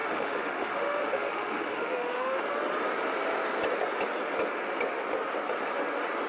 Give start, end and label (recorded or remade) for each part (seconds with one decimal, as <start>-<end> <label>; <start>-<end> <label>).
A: 0.0-2.4 remade; 2.4-6.3 recorded